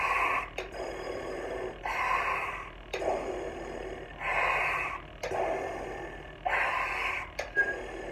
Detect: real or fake real